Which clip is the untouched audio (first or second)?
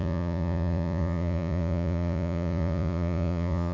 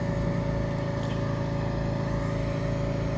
second